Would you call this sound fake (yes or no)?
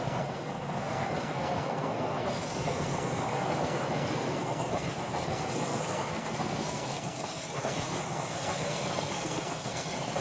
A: yes